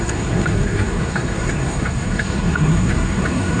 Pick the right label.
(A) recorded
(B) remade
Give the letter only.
B